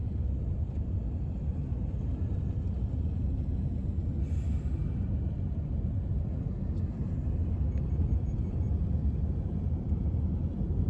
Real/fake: real